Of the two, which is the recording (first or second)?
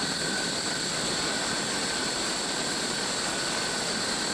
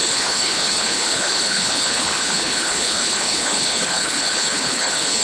first